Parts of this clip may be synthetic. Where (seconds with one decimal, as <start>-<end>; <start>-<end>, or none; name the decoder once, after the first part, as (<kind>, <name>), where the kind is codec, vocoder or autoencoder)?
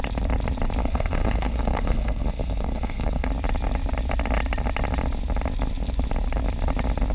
0.8-3.3 (codec, SNAC)